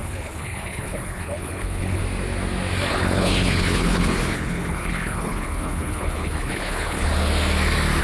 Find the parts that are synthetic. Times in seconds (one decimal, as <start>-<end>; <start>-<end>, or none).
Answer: 0.0-2.0; 2.9-7.1